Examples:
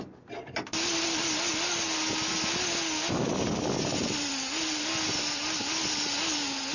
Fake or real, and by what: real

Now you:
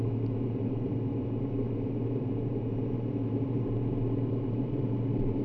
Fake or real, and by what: fake, vocoder, BigVGAN v2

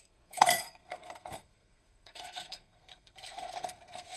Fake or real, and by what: fake, codec, SNAC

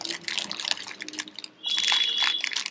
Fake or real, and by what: real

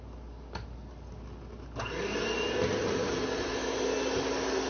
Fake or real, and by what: real